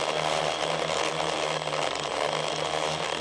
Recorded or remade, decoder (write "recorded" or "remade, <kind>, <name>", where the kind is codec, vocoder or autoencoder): recorded